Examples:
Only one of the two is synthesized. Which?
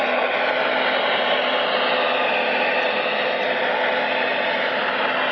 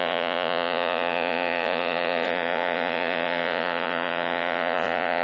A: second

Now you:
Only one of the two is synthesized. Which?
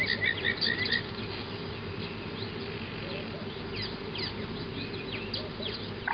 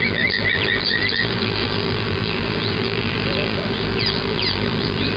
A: second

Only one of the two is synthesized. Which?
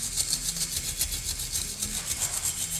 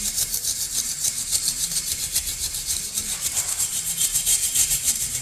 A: second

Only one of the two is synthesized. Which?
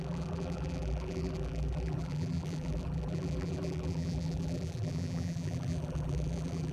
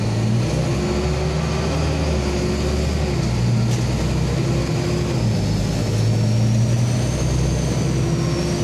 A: first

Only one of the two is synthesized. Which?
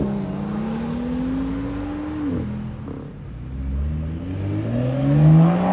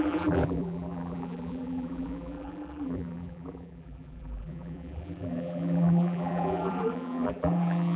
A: second